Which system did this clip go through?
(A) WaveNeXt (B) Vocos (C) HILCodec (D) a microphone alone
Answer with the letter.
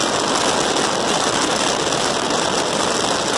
D